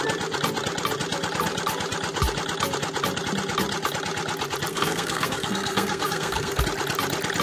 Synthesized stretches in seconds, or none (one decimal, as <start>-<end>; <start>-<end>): 4.7-6.6